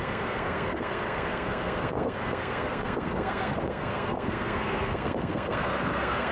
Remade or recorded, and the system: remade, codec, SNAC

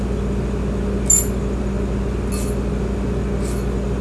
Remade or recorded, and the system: recorded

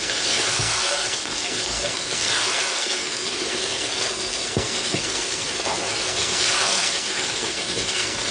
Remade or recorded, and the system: remade, codec, SNAC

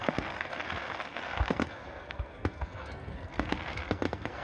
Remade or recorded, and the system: remade, codec, SNAC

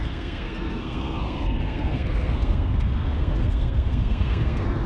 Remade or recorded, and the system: remade, codec, SNAC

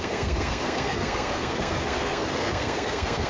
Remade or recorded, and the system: remade, codec, SNAC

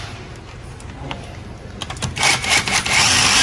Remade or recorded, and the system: recorded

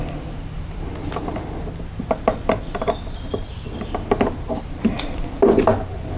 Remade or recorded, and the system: recorded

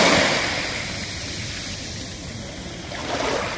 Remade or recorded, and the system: recorded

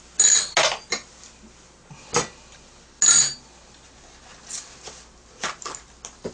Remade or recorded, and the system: recorded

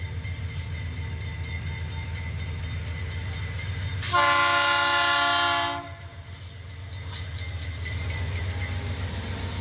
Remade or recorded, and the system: recorded